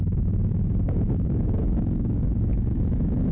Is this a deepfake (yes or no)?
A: yes